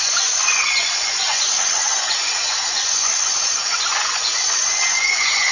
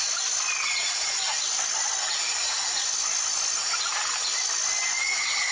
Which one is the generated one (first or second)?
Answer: first